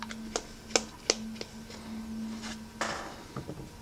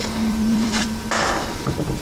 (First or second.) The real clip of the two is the first